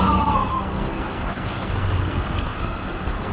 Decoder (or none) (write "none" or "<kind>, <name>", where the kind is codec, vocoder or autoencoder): codec, SNAC